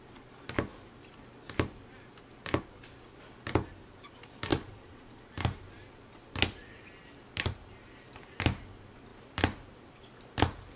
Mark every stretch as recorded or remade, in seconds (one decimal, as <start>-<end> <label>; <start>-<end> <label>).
0.0-4.5 recorded; 4.5-5.2 remade; 5.2-10.8 recorded